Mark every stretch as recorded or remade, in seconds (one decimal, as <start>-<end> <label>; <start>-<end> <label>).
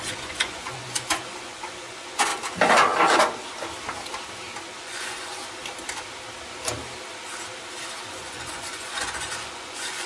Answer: 0.0-2.3 remade; 2.3-4.8 recorded; 4.8-5.4 remade; 5.4-8.1 recorded; 8.1-10.1 remade